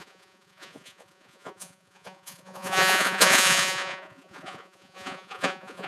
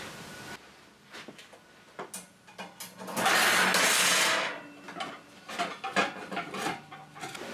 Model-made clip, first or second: first